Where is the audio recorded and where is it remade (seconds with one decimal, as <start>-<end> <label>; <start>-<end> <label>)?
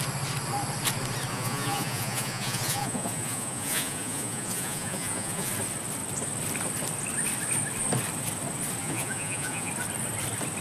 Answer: 0.0-1.3 recorded; 1.3-5.5 remade; 5.5-8.8 recorded; 8.8-9.7 remade; 9.7-10.6 recorded